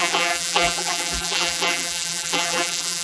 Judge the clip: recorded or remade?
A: remade